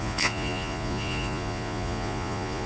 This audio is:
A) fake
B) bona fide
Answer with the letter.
A